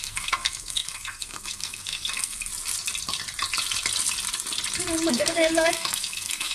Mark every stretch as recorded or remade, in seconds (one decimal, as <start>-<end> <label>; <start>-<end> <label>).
0.0-2.5 remade; 2.5-5.1 recorded; 5.1-6.5 remade